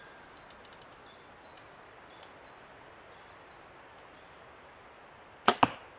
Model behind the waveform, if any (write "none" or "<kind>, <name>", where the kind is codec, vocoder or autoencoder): none